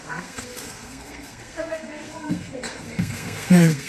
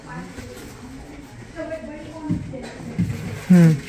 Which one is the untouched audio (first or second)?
second